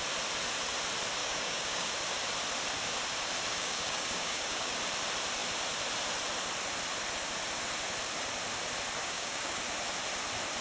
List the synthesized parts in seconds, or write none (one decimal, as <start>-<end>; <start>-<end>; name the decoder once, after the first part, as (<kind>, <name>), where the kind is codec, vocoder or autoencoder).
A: 1.2-1.9 (codec, DAC); 3.5-4.8; 9.0-9.6